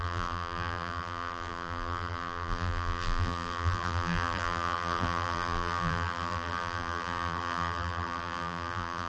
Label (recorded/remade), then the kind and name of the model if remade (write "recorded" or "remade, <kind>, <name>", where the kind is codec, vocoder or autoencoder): remade, vocoder, BigVGAN v2